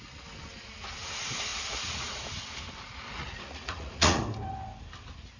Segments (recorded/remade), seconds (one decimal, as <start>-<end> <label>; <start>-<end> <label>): 0.0-1.5 recorded; 1.5-2.2 remade; 2.2-3.2 recorded; 3.2-4.2 remade; 4.2-5.4 recorded